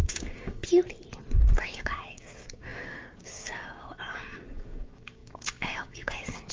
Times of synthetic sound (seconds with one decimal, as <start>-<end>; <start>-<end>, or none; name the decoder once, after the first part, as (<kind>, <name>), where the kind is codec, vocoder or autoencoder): 0.0-0.6 (codec, DAC); 1.6-6.5